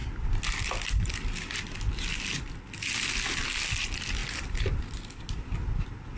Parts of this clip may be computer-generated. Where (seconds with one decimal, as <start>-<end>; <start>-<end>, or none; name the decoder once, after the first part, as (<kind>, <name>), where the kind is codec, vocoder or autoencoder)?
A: none